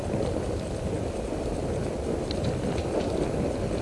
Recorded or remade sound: recorded